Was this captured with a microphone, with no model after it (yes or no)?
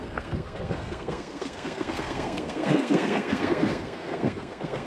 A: no